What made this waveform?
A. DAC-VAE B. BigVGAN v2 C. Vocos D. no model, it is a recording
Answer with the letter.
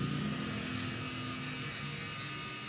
D